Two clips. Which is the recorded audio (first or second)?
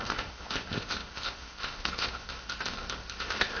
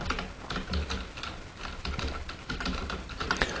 second